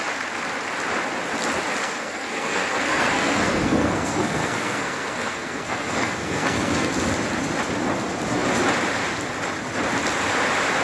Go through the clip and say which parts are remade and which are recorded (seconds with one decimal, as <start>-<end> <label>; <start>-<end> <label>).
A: 0.0-1.8 recorded; 1.8-6.9 remade; 6.9-10.8 recorded